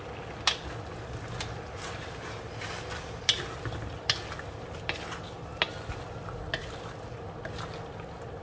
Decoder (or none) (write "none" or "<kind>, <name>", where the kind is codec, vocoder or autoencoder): none